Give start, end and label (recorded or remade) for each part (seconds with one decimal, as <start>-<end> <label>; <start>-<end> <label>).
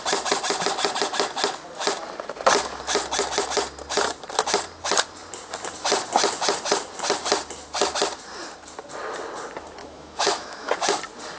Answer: 0.0-9.8 recorded; 9.8-10.7 remade; 10.7-11.4 recorded